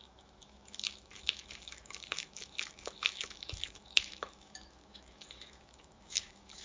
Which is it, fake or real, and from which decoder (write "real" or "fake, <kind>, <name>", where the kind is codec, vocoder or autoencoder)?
fake, autoencoder, DAC-VAE